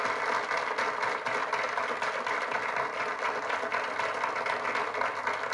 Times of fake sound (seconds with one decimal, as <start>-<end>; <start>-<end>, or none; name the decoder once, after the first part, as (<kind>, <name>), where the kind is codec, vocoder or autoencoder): none